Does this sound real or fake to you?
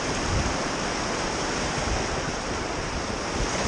real